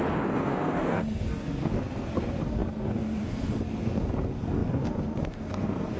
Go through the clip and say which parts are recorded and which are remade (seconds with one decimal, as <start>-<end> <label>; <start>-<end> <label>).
0.0-6.0 remade

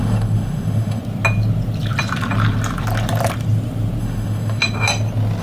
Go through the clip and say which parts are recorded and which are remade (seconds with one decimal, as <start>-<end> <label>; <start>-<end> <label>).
0.0-1.0 remade; 1.0-4.0 recorded; 4.0-4.6 remade; 4.6-5.4 recorded

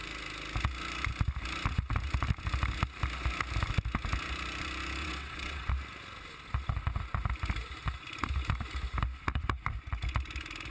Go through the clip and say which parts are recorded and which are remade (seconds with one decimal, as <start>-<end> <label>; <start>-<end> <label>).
0.0-5.0 recorded; 5.0-5.7 remade; 5.7-10.7 recorded

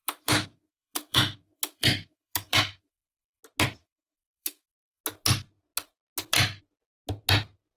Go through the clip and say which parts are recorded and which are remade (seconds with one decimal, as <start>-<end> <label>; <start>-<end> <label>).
0.0-3.4 remade; 3.4-3.8 recorded; 3.8-5.0 remade; 5.0-7.8 recorded

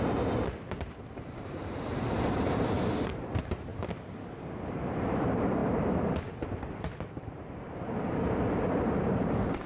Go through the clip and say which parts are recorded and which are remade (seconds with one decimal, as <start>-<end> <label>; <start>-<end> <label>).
0.0-3.7 remade; 3.7-4.6 recorded; 4.6-9.7 remade